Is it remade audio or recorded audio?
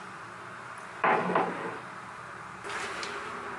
recorded